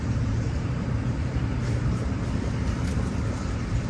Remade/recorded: remade